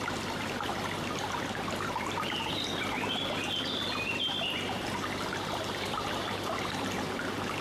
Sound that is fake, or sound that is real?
real